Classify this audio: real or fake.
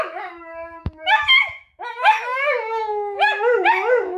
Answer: fake